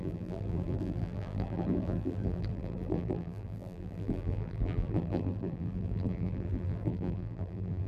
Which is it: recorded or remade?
remade